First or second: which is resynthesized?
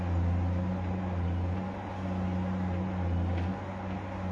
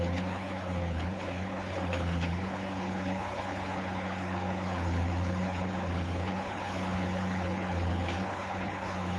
second